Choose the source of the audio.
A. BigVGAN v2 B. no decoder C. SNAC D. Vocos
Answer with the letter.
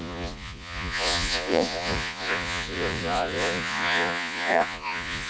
D